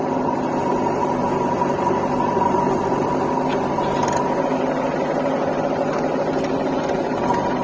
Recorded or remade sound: recorded